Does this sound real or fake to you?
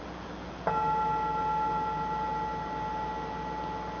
real